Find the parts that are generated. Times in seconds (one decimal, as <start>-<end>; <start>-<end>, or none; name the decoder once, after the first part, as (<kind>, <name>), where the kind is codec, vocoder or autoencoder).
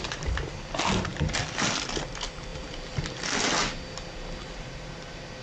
none